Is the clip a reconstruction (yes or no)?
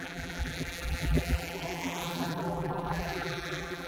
yes